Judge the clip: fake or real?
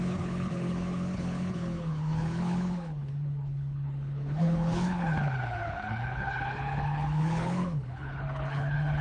fake